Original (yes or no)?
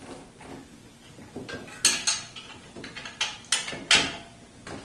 yes